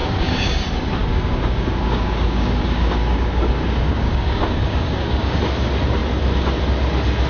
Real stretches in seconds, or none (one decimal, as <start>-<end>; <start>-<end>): 0.6-1.0; 5.4-7.3